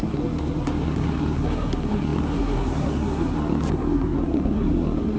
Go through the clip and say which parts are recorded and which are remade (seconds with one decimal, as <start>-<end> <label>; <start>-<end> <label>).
0.0-5.2 remade